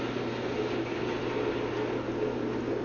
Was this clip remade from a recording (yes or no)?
no